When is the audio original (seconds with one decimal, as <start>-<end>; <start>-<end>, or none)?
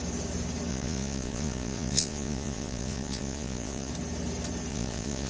0.0-0.7; 3.9-4.7